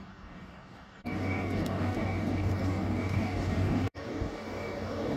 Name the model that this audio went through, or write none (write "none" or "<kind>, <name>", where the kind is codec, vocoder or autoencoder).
codec, DAC